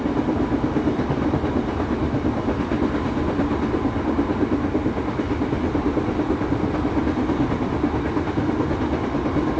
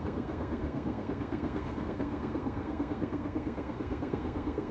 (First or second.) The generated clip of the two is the second